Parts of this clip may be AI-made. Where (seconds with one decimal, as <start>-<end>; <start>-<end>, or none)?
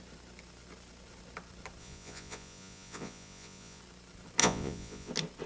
1.8-3.8; 4.4-5.1